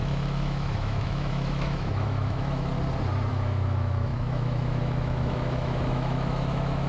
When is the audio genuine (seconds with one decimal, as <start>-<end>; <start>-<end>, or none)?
2.7-3.3